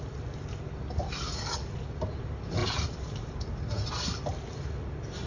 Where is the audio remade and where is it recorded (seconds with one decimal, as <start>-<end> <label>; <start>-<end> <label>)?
0.0-2.6 recorded; 2.6-3.4 remade; 3.4-5.3 recorded

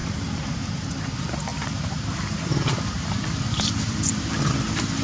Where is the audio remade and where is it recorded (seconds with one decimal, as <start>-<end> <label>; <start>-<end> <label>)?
0.0-0.7 remade; 0.7-1.5 recorded; 1.5-4.5 remade; 4.5-5.0 recorded

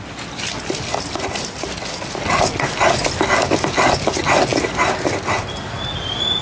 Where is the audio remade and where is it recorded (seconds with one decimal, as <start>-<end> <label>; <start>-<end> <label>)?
0.0-6.4 recorded

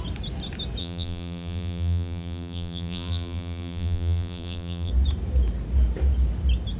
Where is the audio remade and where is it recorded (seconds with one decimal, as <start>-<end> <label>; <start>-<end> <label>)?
0.0-0.8 recorded; 0.8-4.9 remade; 4.9-6.8 recorded

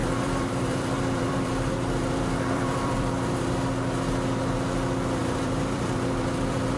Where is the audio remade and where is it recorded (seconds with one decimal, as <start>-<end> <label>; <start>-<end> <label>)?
0.0-3.3 remade; 3.3-5.2 recorded; 5.2-6.8 remade

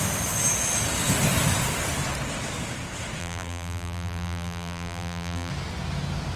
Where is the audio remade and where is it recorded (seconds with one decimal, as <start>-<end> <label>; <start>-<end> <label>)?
0.0-3.2 recorded; 3.2-5.5 remade; 5.5-6.4 recorded

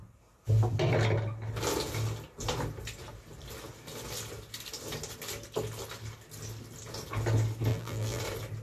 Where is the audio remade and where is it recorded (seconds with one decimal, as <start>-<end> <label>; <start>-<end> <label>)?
0.0-7.7 recorded; 7.7-8.2 remade; 8.2-8.6 recorded

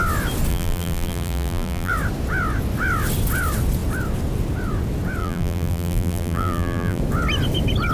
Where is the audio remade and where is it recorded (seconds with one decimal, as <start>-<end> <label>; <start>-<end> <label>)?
0.0-0.5 recorded; 0.5-1.9 remade; 1.9-5.2 recorded; 5.2-7.0 remade; 7.0-7.9 recorded